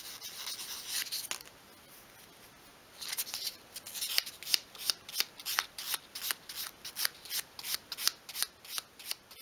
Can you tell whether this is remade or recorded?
recorded